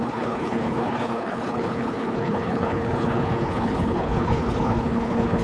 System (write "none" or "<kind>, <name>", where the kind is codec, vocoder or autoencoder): codec, HILCodec